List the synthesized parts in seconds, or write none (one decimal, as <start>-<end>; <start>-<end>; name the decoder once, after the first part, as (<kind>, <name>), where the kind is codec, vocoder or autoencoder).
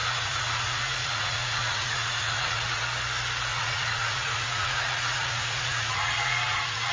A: 0.0-2.8 (vocoder, Vocos); 3.5-6.9